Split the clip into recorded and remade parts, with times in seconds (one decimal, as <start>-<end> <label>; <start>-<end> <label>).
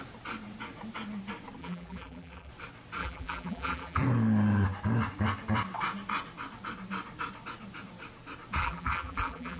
0.0-1.6 recorded; 1.6-2.5 remade; 2.5-3.0 recorded; 3.0-4.0 remade; 4.0-8.6 recorded; 8.6-9.6 remade